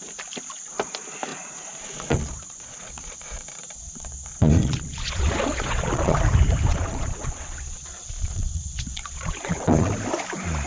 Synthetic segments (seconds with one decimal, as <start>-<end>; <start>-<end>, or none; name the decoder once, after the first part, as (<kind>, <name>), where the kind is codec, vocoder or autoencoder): 1.3-6.2 (vocoder, Vocos); 6.7-9.9